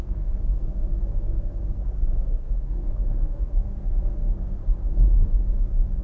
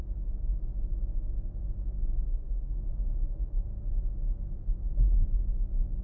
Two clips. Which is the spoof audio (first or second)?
first